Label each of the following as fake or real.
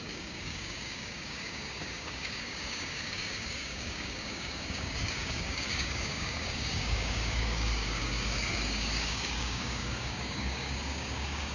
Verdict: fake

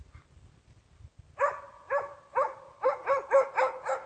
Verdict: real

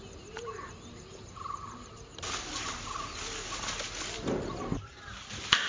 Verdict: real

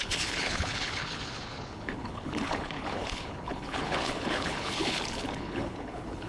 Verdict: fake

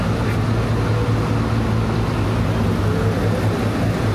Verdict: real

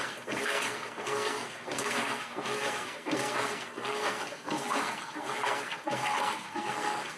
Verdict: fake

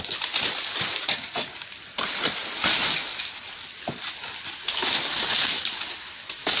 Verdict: real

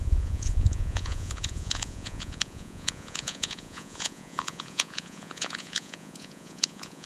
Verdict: fake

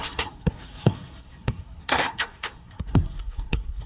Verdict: fake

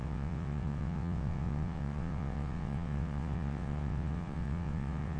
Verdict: fake